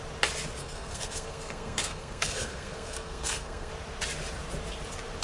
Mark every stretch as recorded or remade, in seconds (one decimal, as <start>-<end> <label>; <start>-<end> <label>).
0.0-0.6 recorded; 0.6-3.7 remade; 3.7-5.2 recorded